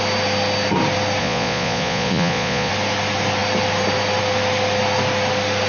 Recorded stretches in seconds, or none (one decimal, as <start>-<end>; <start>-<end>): 0.0-1.2; 2.7-5.7